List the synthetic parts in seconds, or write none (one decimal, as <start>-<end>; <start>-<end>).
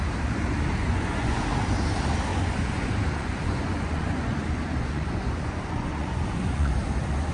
0.8-1.4; 2.3-6.7